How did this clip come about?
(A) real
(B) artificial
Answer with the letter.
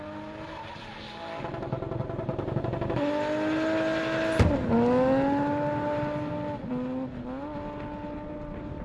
A